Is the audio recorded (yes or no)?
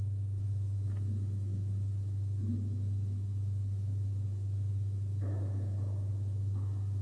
no